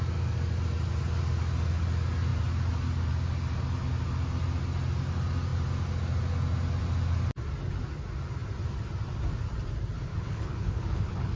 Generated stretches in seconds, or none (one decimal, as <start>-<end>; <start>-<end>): 10.1-11.4